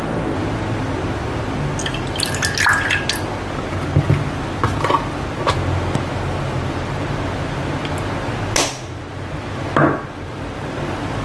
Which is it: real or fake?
real